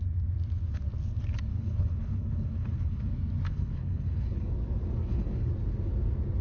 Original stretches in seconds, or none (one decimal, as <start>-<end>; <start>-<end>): 0.0-1.5; 3.1-3.5; 4.4-5.0; 5.5-6.4